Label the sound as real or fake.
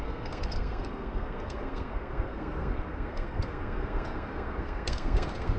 fake